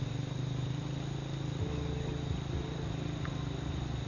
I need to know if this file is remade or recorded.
recorded